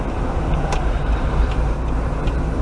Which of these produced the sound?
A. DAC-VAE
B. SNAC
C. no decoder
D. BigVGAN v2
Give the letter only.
D